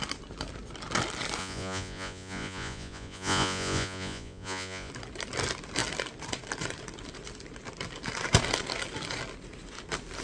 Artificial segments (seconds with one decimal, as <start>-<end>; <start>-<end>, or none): 1.4-4.9